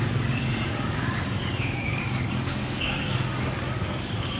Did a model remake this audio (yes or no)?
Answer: yes